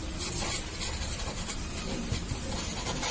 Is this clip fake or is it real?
real